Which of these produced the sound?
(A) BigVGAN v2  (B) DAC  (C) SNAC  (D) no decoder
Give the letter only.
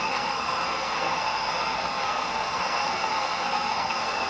C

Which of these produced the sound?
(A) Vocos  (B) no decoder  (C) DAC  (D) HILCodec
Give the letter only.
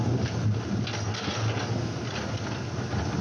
B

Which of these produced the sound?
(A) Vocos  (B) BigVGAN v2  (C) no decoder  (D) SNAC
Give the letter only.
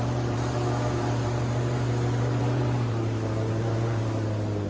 B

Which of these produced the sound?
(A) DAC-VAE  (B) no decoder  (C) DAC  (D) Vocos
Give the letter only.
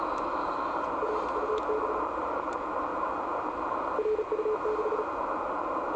B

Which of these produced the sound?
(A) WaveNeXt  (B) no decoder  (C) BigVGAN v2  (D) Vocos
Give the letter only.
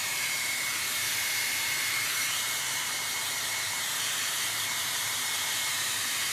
C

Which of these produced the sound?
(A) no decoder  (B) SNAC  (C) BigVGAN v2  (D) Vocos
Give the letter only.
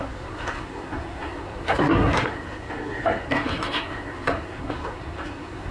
B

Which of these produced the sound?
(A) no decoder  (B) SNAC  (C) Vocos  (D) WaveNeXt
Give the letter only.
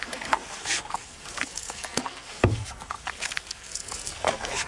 B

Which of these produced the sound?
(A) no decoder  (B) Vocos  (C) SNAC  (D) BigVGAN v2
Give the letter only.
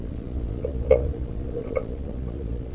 B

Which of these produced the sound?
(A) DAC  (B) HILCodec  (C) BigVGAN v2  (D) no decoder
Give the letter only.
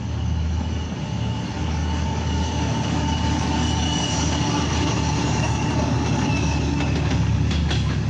A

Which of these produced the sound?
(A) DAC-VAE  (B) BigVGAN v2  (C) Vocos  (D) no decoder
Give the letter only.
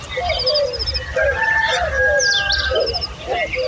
D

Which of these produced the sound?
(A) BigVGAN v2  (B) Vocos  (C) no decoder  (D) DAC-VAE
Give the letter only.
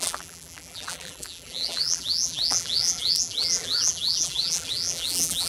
A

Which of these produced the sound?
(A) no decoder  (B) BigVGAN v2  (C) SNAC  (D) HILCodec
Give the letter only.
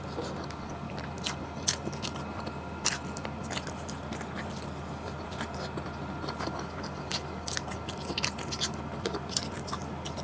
A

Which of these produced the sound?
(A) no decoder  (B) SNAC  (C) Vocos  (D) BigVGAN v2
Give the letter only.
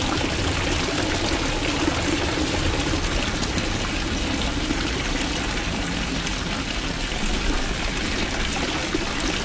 A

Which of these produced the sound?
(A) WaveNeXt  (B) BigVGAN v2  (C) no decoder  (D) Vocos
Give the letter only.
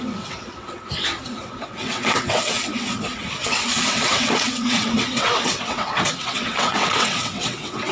A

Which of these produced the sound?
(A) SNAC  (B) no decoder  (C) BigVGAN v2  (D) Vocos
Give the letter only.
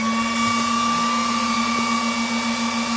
B